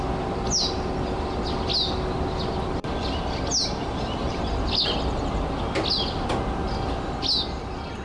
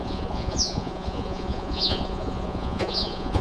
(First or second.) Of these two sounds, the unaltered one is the first